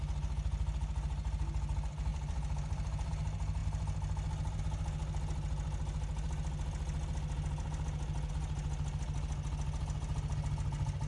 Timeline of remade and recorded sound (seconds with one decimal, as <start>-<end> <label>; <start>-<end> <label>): 0.0-2.1 recorded; 2.1-3.1 remade; 3.1-11.1 recorded